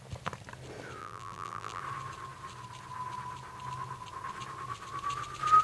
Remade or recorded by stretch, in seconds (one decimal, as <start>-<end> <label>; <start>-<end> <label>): 0.0-1.0 recorded; 1.0-1.8 remade; 1.8-5.6 recorded